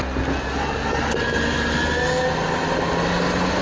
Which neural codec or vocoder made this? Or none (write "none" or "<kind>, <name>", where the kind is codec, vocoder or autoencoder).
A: none